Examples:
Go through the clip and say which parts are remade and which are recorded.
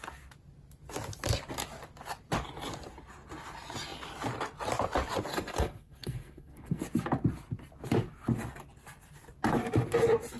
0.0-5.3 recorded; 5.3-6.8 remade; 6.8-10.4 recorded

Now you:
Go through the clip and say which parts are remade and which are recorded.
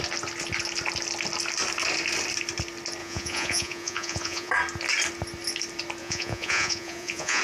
0.0-3.0 recorded; 3.0-4.5 remade; 4.5-6.0 recorded; 6.0-7.4 remade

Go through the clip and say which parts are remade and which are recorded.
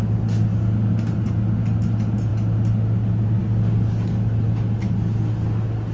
0.0-5.9 recorded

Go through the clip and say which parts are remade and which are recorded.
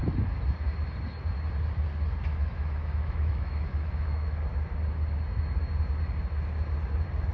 0.0-2.3 recorded; 2.3-4.4 remade; 4.4-7.3 recorded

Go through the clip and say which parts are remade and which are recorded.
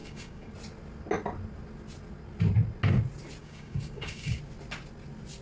0.0-0.5 remade; 0.5-3.4 recorded; 3.4-4.4 remade; 4.4-5.4 recorded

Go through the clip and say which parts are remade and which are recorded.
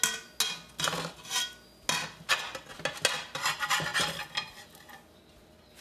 0.0-5.8 recorded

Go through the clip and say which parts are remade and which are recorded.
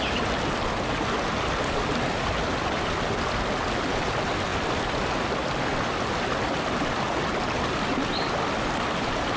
0.0-4.5 recorded; 4.5-5.0 remade; 5.0-9.4 recorded